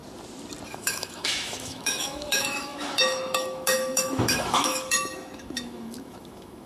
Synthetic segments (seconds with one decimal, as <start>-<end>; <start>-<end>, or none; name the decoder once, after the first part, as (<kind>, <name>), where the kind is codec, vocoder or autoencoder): 0.7-6.7 (autoencoder, DAC-VAE)